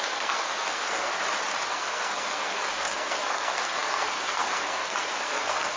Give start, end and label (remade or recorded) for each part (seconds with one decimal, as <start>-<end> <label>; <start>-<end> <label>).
0.0-1.1 remade; 1.1-1.7 recorded; 1.7-5.8 remade